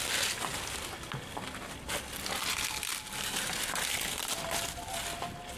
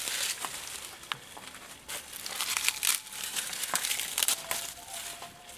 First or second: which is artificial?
second